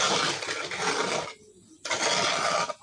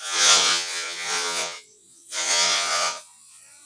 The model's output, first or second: second